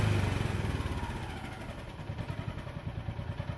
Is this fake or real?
real